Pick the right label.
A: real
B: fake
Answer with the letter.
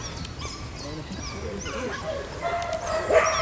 A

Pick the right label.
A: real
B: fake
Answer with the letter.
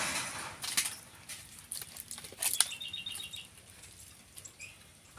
A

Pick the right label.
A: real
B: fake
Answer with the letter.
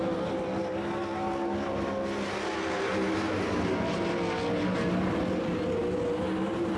A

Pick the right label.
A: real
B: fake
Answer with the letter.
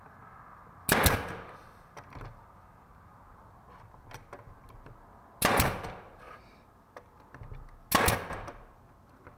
A